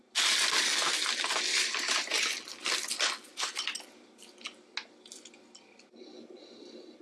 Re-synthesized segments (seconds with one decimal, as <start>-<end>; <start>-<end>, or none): 1.5-2.1